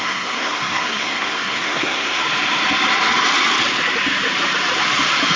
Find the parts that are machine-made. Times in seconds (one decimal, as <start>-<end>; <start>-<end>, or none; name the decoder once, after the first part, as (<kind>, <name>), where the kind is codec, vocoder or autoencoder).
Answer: 0.0-2.2 (codec, SNAC)